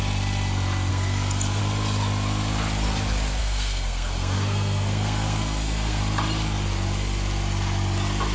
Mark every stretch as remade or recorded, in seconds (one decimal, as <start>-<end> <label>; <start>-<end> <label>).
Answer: 0.0-0.9 recorded; 0.9-1.6 remade; 1.6-3.4 recorded; 3.4-6.0 remade; 6.0-8.3 recorded